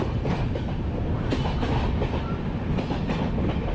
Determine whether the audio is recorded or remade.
recorded